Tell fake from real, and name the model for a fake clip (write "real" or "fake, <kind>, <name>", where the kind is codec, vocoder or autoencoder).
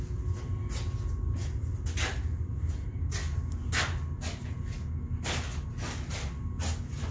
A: real